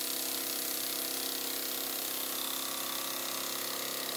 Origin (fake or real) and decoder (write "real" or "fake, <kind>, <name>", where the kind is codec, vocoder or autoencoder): real